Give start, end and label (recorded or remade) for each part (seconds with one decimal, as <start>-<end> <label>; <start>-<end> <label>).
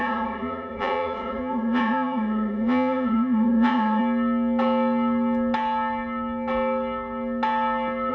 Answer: 0.0-4.0 remade; 4.0-8.1 recorded